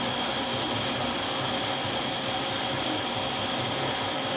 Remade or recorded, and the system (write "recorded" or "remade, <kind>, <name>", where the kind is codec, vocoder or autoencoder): recorded